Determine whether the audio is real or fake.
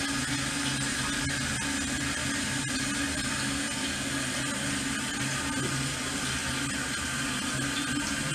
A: real